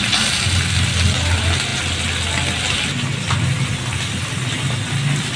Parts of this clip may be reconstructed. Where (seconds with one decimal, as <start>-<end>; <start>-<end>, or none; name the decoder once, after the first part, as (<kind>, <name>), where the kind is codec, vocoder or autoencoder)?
none